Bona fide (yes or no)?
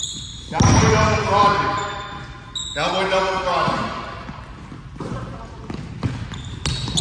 yes